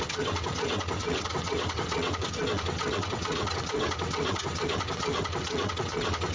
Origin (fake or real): fake